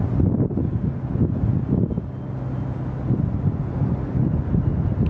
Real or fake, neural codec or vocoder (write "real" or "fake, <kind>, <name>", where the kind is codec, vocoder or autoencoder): real